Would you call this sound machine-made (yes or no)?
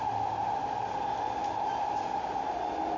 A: no